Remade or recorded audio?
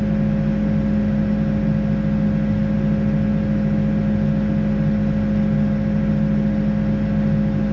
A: recorded